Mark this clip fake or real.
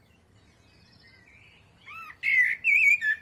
real